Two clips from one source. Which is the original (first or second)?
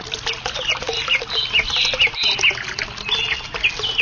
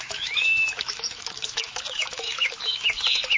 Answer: first